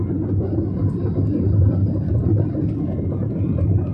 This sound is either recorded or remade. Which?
recorded